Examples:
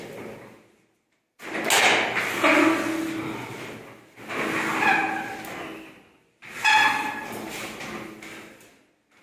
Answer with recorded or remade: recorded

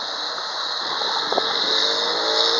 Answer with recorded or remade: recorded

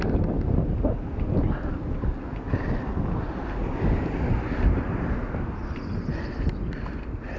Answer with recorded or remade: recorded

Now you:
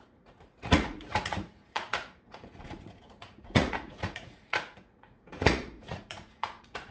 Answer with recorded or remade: remade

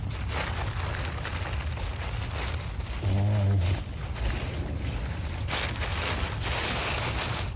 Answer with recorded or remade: recorded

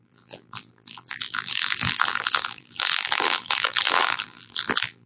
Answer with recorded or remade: remade